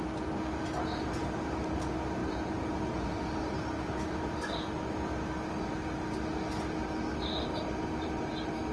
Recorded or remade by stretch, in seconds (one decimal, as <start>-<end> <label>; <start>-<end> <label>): 0.0-8.7 recorded